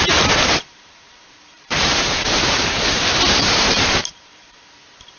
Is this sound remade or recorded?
remade